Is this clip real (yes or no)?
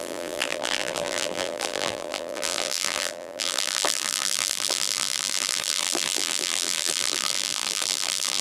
no